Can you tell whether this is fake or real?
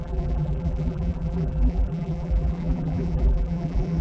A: fake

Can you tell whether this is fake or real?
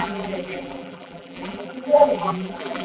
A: fake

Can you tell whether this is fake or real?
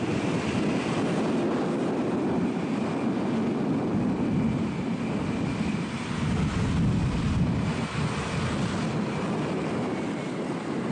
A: real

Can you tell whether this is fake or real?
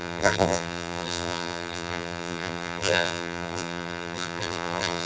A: fake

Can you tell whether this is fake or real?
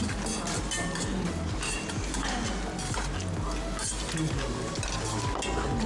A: real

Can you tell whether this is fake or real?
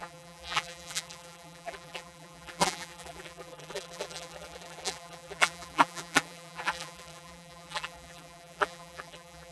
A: fake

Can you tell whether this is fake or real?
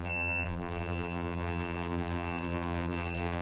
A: fake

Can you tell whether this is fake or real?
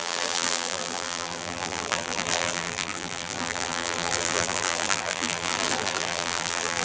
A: fake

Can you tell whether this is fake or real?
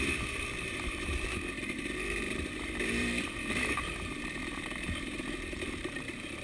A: fake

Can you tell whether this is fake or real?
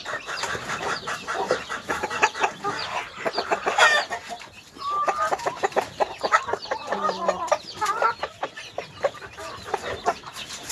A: fake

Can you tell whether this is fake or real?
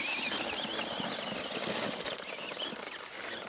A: real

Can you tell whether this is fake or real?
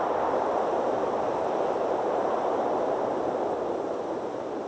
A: fake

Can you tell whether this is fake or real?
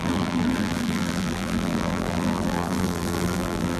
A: fake